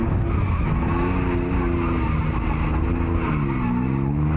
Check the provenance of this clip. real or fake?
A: real